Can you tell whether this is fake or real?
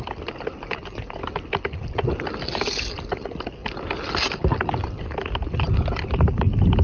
real